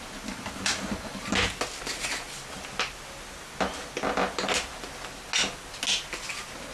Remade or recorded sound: recorded